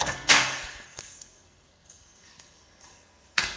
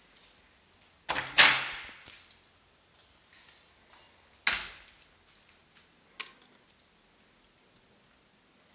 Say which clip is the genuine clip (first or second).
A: second